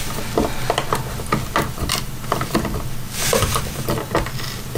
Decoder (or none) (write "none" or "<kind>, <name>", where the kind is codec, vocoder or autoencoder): none